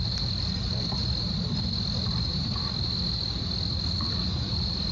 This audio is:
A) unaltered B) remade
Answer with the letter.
A